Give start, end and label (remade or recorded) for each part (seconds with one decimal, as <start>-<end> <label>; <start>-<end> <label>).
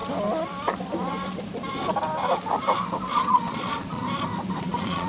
0.0-3.1 recorded; 3.1-4.0 remade; 4.0-4.6 recorded; 4.6-5.1 remade